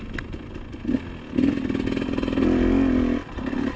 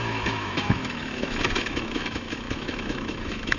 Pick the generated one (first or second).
second